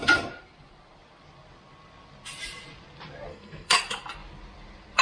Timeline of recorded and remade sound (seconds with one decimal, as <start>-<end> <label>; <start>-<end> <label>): 0.0-3.3 recorded; 3.3-3.8 remade; 3.8-5.0 recorded